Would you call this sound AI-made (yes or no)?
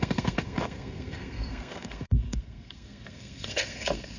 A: yes